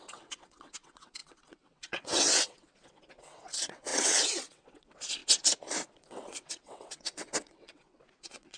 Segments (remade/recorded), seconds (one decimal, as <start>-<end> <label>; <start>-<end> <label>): 0.0-5.2 remade; 5.2-6.0 recorded; 6.0-8.6 remade